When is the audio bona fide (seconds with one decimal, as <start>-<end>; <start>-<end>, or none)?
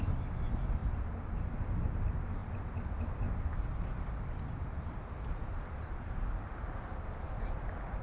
0.0-8.0